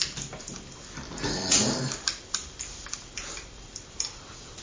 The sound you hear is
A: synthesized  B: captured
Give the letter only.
B